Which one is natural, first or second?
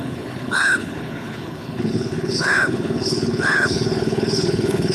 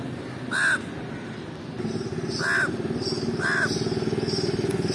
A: second